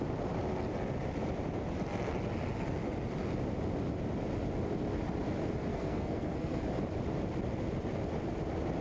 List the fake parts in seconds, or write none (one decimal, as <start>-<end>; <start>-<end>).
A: 5.7-6.6